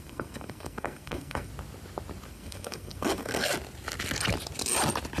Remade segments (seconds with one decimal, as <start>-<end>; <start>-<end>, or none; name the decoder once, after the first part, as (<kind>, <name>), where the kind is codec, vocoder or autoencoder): 0.0-1.5 (codec, SNAC); 2.3-3.5